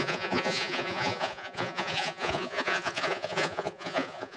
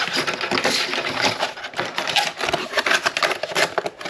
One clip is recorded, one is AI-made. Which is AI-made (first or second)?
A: first